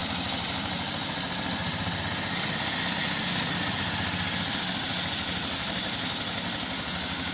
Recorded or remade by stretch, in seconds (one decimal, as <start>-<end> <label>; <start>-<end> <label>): 0.0-7.3 recorded